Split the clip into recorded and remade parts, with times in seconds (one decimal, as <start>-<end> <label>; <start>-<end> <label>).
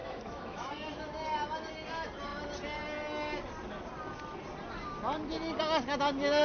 0.0-0.7 remade; 0.7-6.4 recorded